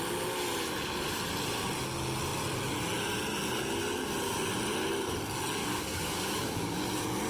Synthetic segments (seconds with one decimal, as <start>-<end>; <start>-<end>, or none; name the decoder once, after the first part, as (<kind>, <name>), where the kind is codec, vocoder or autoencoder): 5.6-6.8 (codec, DAC)

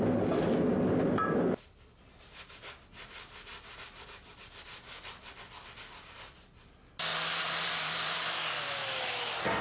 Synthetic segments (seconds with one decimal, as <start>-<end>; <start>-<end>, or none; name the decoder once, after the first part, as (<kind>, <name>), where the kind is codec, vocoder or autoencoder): 7.1-8.2 (vocoder, BigVGAN v2)

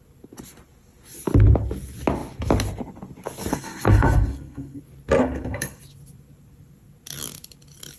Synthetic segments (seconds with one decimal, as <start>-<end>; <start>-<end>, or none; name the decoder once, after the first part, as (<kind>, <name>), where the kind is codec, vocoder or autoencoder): 3.5-4.8 (codec, SNAC); 5.2-5.8